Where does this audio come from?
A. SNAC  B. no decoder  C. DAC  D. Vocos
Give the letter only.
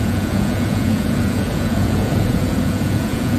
D